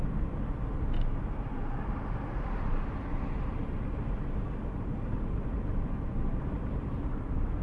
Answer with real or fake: real